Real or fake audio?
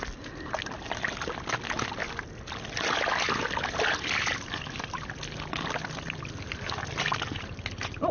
real